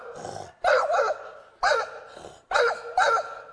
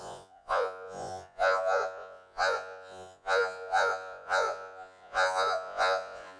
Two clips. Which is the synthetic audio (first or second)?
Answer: second